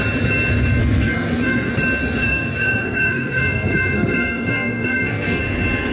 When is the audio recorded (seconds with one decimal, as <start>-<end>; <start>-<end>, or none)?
0.0-0.8; 1.7-2.2; 5.4-5.9